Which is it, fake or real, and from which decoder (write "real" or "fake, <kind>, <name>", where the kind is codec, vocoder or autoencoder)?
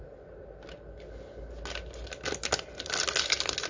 real